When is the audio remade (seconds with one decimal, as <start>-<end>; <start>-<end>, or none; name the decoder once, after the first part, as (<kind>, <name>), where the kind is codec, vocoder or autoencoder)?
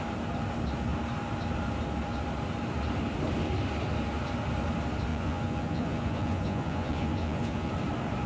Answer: 5.1-7.7 (vocoder, Vocos)